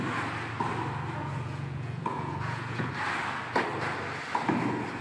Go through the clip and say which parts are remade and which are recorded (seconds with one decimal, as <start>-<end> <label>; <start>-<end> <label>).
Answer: 0.0-1.2 recorded; 1.2-2.9 remade; 2.9-5.0 recorded